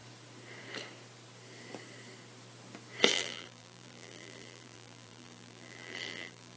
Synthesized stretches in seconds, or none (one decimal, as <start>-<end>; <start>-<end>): 3.1-6.6